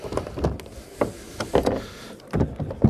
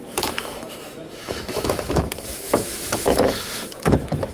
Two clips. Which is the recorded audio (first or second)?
first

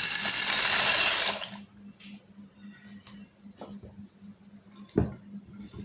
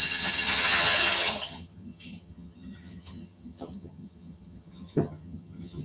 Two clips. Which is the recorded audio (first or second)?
first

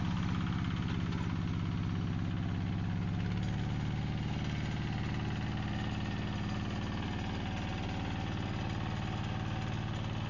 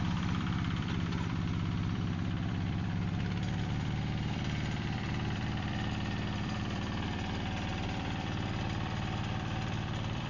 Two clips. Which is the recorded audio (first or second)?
first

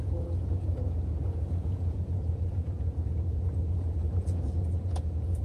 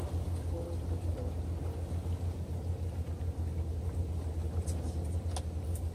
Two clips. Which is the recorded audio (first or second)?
second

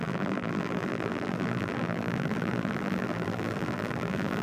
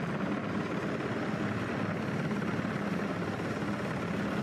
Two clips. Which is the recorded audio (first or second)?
second